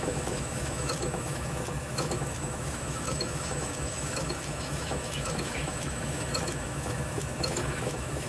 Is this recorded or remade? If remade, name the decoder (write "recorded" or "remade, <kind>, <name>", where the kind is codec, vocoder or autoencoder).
remade, autoencoder, DAC-VAE